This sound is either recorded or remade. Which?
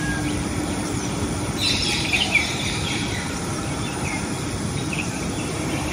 remade